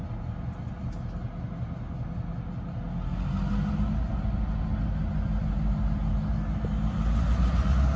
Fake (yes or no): no